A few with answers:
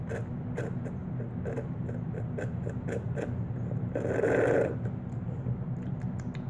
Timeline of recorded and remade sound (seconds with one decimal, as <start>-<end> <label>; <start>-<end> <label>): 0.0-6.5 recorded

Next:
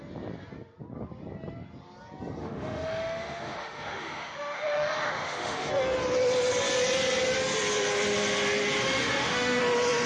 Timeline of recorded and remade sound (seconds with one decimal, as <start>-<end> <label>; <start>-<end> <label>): 0.0-2.4 recorded; 2.4-5.7 remade; 5.7-8.8 recorded; 8.8-9.6 remade; 9.6-10.1 recorded

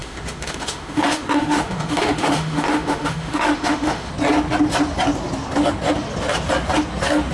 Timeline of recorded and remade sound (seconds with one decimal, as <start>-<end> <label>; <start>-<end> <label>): 0.0-4.1 remade; 4.1-7.3 recorded

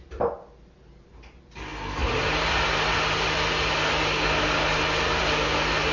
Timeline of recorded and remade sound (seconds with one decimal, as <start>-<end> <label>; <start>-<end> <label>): 0.0-5.9 recorded

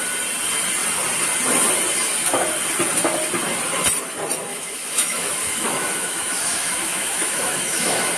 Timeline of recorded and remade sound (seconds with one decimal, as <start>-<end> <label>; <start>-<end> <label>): 0.0-4.5 recorded; 4.5-8.2 remade

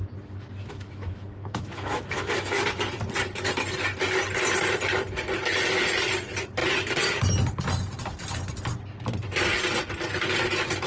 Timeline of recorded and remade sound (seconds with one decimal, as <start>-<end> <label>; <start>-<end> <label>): 0.0-0.6 recorded; 0.6-2.3 remade; 2.3-10.9 recorded